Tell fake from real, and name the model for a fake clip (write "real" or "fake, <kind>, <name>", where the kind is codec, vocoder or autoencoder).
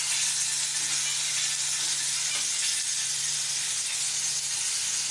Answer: real